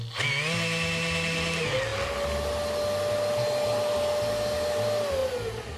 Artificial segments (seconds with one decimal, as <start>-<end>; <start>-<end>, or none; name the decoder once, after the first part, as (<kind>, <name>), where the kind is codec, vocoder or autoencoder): 5.2-5.8 (vocoder, BigVGAN v2)